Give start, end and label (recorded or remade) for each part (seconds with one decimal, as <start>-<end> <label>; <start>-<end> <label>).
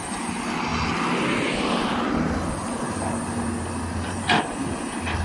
0.0-5.2 recorded